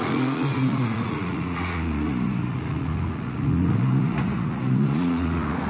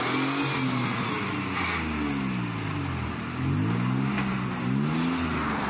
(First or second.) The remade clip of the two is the first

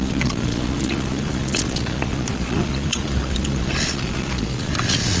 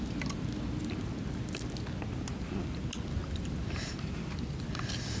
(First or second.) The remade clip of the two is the first